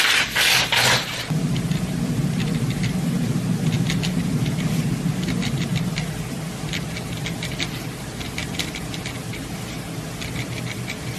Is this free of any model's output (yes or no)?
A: yes